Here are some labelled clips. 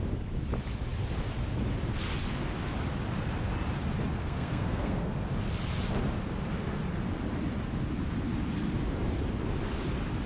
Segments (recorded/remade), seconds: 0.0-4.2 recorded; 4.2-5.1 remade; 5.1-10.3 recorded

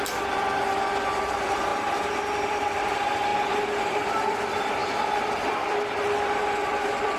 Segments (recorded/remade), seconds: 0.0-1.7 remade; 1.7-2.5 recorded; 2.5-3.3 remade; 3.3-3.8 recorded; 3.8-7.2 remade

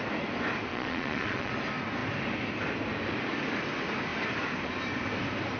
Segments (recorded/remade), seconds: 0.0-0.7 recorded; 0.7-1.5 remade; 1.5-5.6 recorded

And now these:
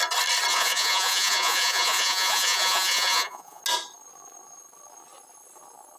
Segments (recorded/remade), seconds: 0.0-0.5 recorded; 0.5-3.6 remade; 3.6-6.0 recorded

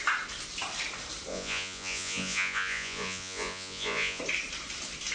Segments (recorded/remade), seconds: 0.0-1.3 recorded; 1.3-4.2 remade; 4.2-5.1 recorded